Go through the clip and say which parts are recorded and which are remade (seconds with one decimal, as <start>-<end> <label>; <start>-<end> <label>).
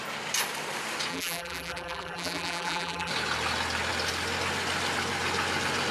0.0-1.1 recorded; 1.1-3.1 remade; 3.1-5.9 recorded